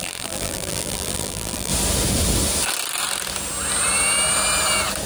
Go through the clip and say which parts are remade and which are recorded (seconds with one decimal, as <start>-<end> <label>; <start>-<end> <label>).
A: 0.0-1.7 remade; 1.7-5.1 recorded